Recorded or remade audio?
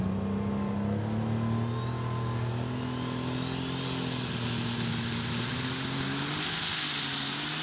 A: recorded